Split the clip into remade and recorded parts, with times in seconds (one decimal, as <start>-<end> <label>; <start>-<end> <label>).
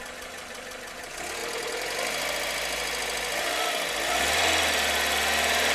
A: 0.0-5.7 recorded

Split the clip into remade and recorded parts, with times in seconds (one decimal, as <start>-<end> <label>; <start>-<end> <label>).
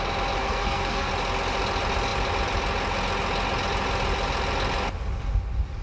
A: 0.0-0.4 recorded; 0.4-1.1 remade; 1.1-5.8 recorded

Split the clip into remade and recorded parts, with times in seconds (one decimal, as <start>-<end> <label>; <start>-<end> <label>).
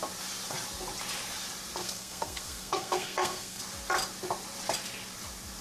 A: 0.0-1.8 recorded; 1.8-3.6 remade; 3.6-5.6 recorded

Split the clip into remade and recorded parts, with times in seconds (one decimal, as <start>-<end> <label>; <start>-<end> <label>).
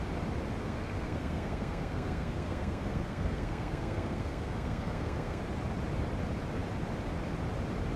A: 0.0-0.6 recorded; 0.6-5.4 remade; 5.4-8.0 recorded